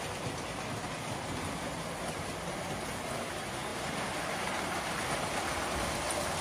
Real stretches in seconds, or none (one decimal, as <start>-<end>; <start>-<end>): 0.0-3.7; 5.9-6.4